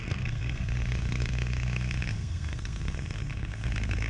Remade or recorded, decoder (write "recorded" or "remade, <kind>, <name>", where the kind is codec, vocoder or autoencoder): remade, codec, SNAC